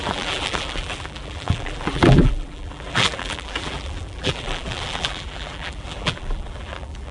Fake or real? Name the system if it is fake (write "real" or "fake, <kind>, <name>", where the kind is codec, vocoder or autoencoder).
fake, vocoder, BigVGAN v2